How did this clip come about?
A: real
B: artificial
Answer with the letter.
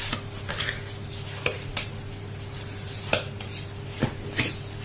A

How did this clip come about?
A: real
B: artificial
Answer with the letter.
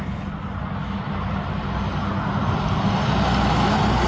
A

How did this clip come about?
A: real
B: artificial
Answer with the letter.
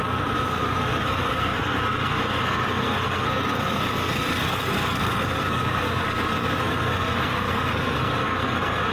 B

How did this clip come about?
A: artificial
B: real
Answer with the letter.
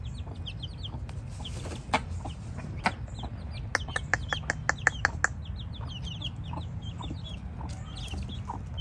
B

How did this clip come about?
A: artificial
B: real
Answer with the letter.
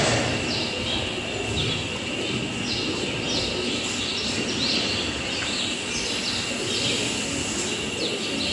B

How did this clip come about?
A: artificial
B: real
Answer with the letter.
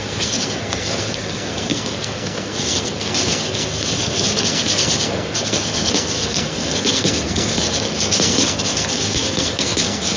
A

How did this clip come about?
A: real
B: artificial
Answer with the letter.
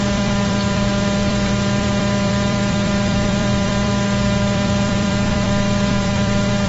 B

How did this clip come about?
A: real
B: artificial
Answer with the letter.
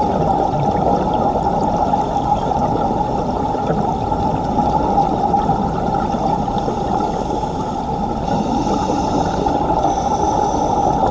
A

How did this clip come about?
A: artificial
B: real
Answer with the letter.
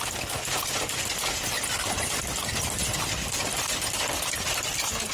B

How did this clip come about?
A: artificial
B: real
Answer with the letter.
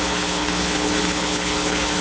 A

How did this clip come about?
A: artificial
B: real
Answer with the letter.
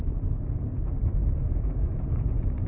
A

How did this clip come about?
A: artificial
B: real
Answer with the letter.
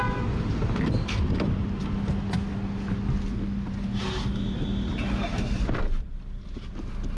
B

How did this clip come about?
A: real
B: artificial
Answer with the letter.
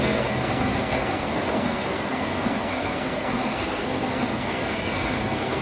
B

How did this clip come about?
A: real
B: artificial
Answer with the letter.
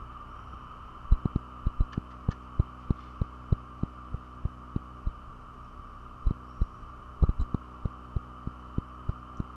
A